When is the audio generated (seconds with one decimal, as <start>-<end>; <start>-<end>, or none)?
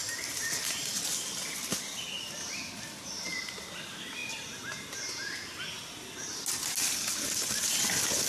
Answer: none